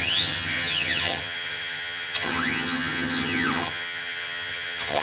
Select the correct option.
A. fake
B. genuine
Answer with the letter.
A